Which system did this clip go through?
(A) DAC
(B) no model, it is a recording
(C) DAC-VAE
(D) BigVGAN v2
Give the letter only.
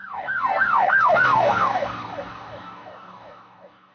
A